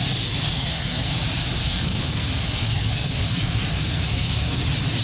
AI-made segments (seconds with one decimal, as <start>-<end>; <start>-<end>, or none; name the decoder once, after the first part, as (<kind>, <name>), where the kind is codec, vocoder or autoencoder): 0.5-1.1 (codec, SNAC); 1.6-4.6